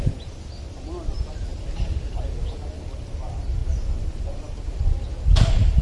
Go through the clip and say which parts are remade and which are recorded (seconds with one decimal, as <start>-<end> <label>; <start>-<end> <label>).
0.0-5.8 recorded